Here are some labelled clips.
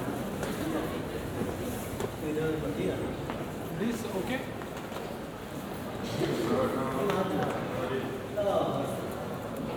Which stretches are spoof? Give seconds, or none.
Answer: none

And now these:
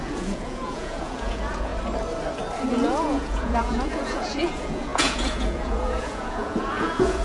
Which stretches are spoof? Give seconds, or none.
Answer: 0.0-1.7 (vocoder, Vocos); 2.7-7.2

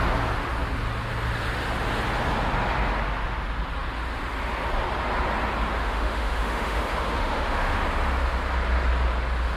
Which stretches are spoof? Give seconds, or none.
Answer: 5.8-7.8 (autoencoder, DAC-VAE)

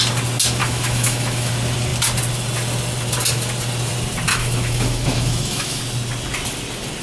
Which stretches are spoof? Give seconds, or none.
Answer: 0.6-1.5 (autoencoder, DAC-VAE); 4.3-5.8

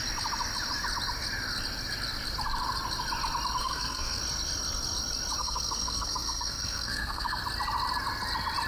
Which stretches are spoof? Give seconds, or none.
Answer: 3.6-4.2 (codec, SNAC); 5.4-7.4

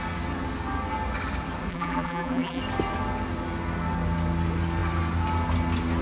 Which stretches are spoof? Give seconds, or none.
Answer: 1.7-2.6 (vocoder, BigVGAN v2)